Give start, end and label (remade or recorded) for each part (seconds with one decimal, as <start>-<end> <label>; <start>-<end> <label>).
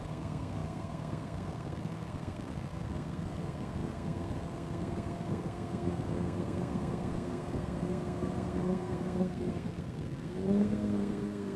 0.0-11.6 remade